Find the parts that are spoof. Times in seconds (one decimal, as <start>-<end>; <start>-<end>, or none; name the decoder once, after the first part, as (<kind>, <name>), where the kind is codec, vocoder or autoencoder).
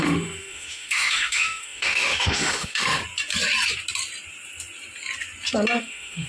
0.0-3.0 (autoencoder, DAC-VAE); 5.8-6.3